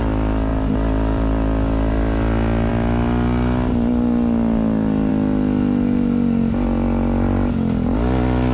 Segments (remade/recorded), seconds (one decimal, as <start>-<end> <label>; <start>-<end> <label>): 0.0-8.5 recorded